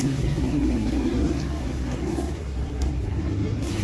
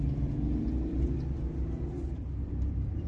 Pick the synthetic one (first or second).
first